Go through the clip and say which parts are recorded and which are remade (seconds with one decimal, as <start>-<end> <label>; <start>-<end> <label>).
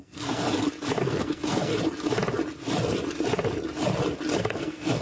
0.0-0.4 remade; 0.4-1.0 recorded; 1.0-1.7 remade; 1.7-4.4 recorded; 4.4-5.0 remade